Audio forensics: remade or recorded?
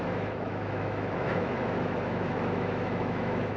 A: remade